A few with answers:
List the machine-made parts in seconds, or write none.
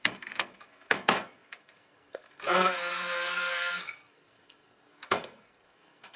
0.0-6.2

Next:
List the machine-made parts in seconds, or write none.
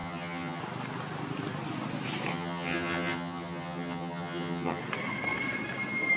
0.0-0.6; 2.3-4.8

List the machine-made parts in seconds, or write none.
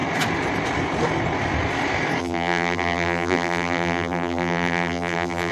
2.2-5.5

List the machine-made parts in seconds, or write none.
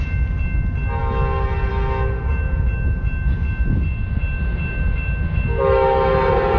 none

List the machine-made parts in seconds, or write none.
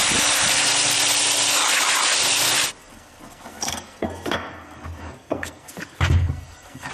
2.8-6.9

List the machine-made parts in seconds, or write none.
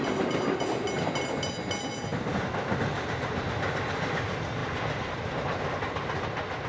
none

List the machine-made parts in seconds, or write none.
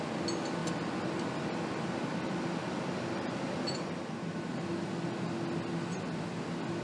none